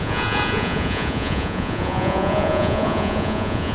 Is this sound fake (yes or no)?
yes